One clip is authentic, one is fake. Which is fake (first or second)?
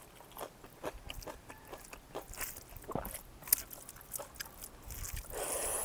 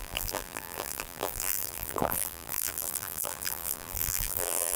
second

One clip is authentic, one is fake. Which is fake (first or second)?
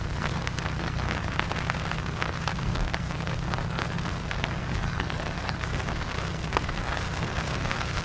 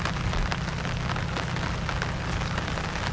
first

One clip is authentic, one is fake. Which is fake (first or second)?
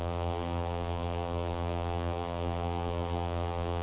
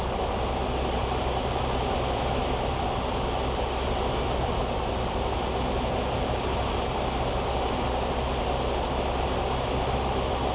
first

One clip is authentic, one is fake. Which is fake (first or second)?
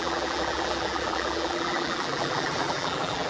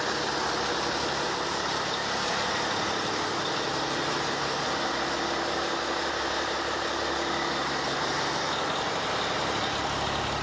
first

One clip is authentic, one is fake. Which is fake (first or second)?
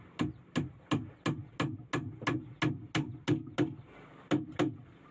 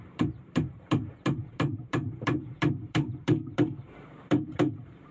second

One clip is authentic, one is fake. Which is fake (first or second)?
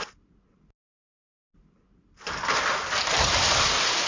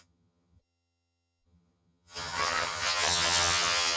second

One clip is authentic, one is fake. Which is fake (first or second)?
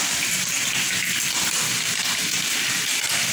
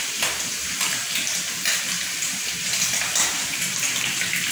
second